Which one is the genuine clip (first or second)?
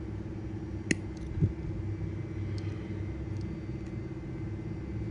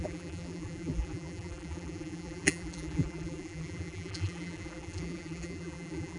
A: first